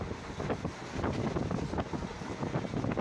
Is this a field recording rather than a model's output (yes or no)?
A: yes